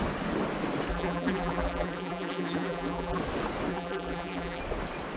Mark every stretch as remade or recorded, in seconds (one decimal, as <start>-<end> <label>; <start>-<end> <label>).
0.0-0.9 recorded; 0.9-3.2 remade; 3.2-3.7 recorded; 3.7-4.6 remade; 4.6-5.2 recorded